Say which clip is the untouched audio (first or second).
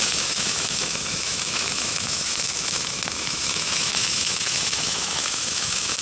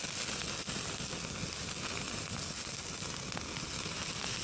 second